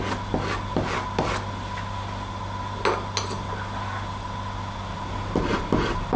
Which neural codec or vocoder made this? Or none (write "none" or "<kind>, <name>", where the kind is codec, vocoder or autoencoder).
none